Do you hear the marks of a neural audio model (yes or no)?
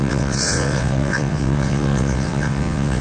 yes